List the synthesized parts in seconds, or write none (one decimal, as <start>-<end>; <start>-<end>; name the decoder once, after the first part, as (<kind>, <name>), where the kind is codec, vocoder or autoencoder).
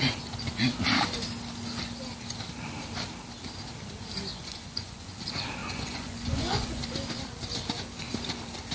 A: 4.3-5.0 (vocoder, Vocos); 5.6-6.8